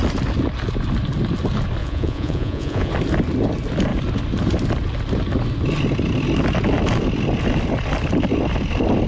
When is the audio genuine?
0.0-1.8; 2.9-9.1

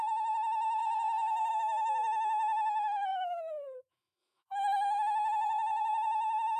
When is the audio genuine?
0.8-1.5